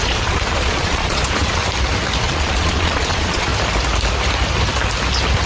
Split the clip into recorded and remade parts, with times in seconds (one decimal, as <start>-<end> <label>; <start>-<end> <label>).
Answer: 0.0-1.6 remade; 1.6-2.2 recorded; 2.2-3.5 remade; 3.5-5.5 recorded